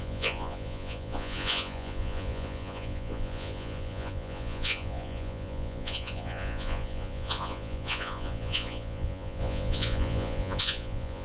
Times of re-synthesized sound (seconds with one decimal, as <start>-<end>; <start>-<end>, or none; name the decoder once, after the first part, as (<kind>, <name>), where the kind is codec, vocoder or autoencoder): 0.0-11.2 (vocoder, Vocos)